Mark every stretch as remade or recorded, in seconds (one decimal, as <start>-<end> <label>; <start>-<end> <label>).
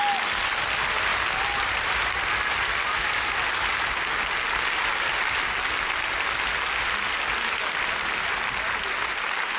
0.0-9.6 recorded